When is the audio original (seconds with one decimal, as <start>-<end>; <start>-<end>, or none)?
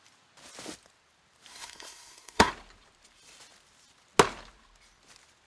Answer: 0.0-1.5; 2.5-5.5